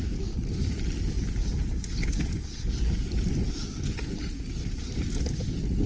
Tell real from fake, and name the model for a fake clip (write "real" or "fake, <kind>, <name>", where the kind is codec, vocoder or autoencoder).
real